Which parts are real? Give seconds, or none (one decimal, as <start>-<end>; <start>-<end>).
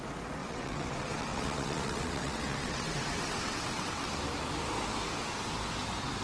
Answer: 0.0-0.4; 4.1-6.2